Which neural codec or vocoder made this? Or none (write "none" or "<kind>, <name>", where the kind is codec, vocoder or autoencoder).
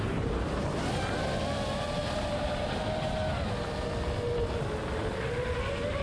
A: none